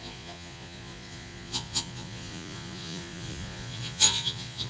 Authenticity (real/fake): fake